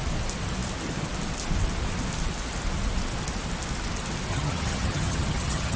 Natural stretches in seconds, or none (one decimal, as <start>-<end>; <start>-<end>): 0.0-4.3